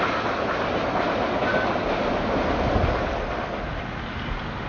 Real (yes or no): yes